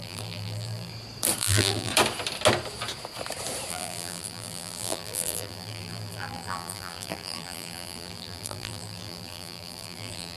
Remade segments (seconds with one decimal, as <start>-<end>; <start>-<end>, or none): 0.0-0.9; 1.4-1.9; 3.7-10.4